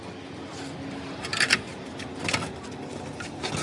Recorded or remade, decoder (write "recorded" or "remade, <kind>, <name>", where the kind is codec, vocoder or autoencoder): recorded